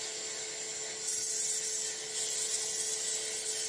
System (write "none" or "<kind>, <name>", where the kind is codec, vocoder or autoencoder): none